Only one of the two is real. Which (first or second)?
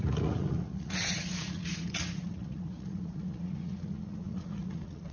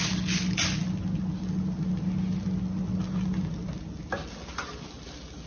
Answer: second